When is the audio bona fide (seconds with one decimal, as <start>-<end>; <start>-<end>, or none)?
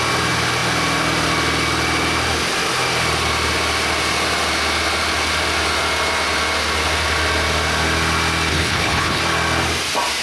0.0-8.5; 9.2-10.2